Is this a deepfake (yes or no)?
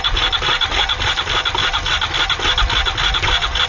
no